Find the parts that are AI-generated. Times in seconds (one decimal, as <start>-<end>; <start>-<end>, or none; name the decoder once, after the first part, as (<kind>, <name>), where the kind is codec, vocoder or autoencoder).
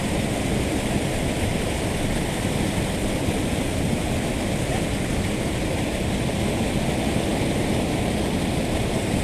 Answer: 1.5-4.9 (vocoder, BigVGAN v2); 7.3-9.2